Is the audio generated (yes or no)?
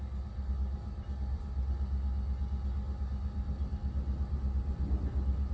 no